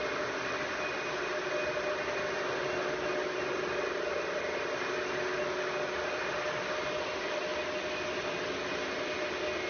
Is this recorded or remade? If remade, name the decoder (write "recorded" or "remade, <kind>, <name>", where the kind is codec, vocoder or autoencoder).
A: recorded